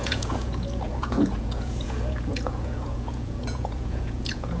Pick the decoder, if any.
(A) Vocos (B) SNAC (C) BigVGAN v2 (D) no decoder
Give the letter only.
A